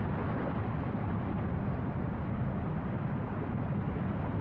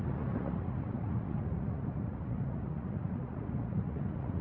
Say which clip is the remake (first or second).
second